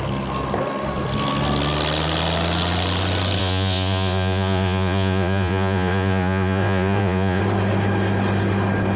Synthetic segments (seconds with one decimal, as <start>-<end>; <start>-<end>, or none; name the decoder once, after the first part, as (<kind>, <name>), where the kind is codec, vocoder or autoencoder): 3.4-7.4 (vocoder, Vocos)